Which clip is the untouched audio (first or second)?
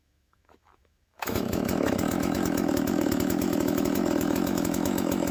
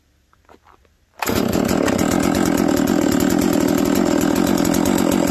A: second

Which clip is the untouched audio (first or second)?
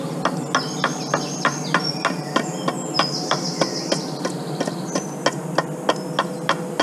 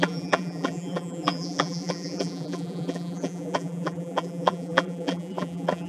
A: first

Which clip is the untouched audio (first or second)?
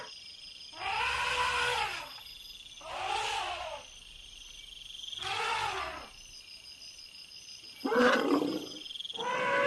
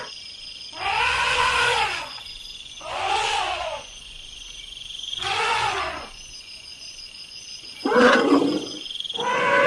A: first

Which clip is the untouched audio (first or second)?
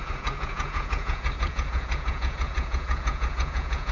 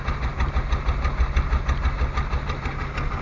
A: second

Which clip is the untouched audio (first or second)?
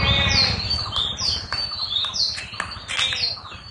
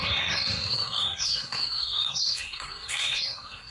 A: first